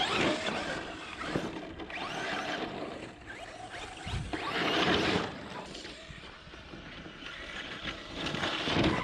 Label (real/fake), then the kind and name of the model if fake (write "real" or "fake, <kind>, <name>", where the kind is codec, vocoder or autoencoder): real